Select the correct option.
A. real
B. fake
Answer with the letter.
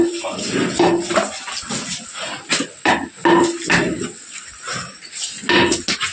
A